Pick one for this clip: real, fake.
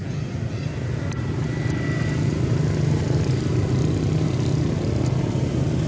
real